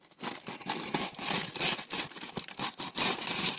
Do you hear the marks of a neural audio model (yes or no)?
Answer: no